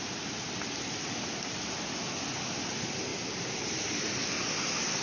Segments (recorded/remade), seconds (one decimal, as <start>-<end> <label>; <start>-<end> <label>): 0.0-5.0 recorded